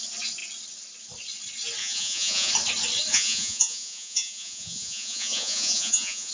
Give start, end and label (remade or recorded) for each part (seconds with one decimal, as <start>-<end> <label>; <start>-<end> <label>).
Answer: 0.0-1.8 recorded; 1.8-2.5 remade; 2.5-3.1 recorded; 3.1-6.3 remade